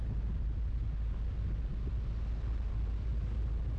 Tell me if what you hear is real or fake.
real